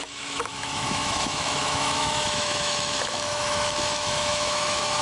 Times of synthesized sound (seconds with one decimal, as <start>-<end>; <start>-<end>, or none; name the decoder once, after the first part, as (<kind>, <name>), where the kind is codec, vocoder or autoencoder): 0.0-5.0 (autoencoder, DAC-VAE)